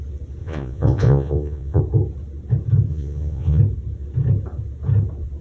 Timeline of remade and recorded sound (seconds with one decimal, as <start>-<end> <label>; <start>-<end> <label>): 0.0-0.4 recorded; 0.4-1.8 remade; 1.8-2.9 recorded; 2.9-3.6 remade; 3.6-5.4 recorded